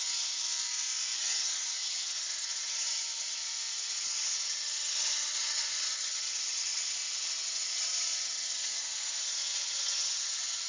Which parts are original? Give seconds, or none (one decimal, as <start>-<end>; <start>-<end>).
0.4-1.2; 3.4-3.9